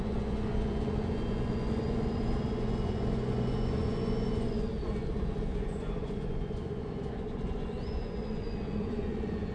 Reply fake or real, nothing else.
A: fake